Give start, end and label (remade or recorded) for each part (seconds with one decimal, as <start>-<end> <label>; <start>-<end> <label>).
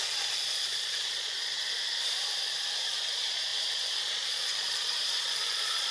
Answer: 0.0-1.6 remade; 1.6-2.9 recorded; 2.9-5.9 remade